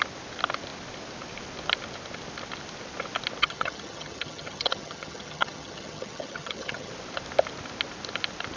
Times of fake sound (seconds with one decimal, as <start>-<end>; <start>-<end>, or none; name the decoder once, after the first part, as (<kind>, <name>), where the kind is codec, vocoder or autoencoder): 3.4-6.9 (vocoder, HiFi-GAN)